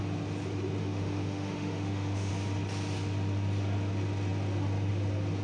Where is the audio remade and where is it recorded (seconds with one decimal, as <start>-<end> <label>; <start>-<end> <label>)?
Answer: 0.0-0.8 recorded; 0.8-2.3 remade; 2.3-5.4 recorded